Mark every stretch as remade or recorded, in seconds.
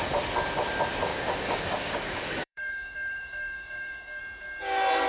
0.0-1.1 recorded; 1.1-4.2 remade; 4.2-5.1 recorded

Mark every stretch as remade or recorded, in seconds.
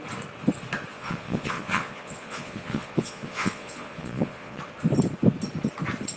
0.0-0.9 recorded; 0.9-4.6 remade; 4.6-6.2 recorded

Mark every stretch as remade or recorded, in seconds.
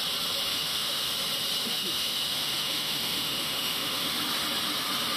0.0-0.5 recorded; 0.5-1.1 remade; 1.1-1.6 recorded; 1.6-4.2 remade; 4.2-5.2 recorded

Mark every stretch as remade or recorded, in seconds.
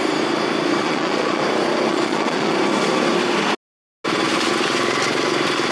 0.0-0.8 recorded; 0.8-1.4 remade; 1.4-1.9 recorded; 1.9-2.5 remade; 2.5-5.7 recorded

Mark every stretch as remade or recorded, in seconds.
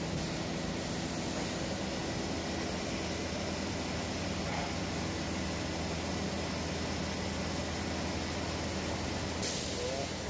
0.0-10.3 recorded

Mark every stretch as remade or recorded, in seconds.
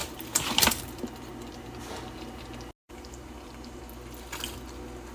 0.0-0.7 remade; 0.7-2.8 recorded; 2.8-3.8 remade; 3.8-5.1 recorded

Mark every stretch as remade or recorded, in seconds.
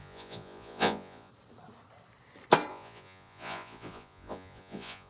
0.0-1.3 remade; 1.3-2.7 recorded; 2.7-5.1 remade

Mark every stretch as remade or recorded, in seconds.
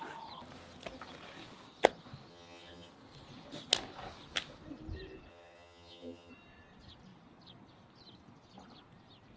0.0-2.3 recorded; 2.3-2.9 remade; 2.9-5.3 recorded; 5.3-6.3 remade; 6.3-9.4 recorded